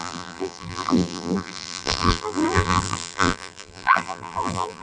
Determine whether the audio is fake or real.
fake